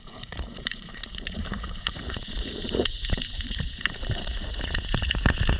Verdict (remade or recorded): remade